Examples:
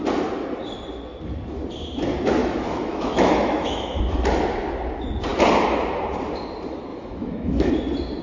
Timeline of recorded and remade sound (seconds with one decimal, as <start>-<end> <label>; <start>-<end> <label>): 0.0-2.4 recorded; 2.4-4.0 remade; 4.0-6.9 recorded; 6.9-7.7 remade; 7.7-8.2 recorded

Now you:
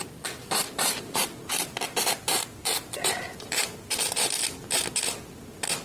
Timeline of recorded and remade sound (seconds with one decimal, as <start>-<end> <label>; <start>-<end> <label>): 0.0-0.4 recorded; 0.4-3.9 remade; 3.9-5.8 recorded

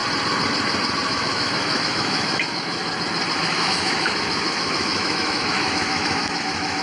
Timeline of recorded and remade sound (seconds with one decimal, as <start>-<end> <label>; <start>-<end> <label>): 0.0-1.1 recorded; 1.1-2.8 remade; 2.8-3.4 recorded; 3.4-6.8 remade